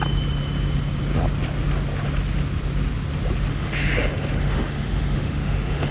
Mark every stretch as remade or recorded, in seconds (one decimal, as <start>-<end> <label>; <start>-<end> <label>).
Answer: 0.0-3.5 recorded; 3.5-5.9 remade